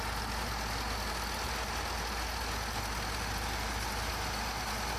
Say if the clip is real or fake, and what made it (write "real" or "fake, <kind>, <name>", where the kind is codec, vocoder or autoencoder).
real